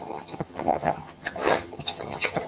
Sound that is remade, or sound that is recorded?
remade